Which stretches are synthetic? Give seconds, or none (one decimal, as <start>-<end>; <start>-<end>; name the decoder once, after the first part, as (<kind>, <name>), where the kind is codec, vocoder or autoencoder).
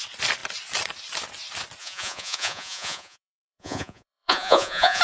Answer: 1.8-5.0 (vocoder, Vocos)